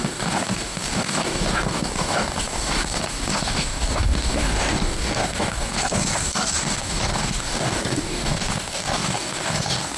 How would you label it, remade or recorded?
remade